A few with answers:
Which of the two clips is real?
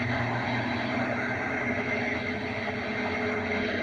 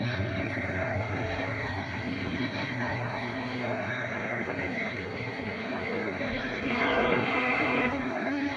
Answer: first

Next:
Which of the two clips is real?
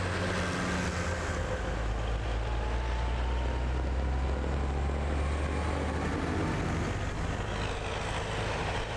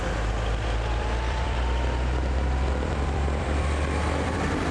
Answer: first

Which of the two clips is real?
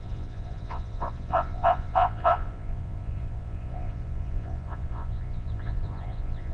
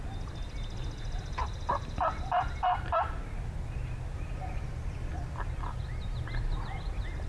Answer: second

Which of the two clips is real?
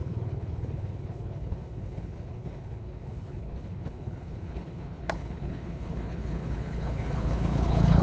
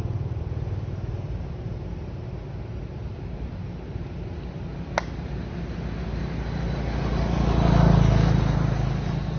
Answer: second